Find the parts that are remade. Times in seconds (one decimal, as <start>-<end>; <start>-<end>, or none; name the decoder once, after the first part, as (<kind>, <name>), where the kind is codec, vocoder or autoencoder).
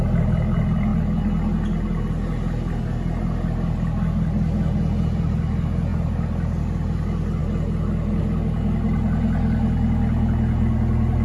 none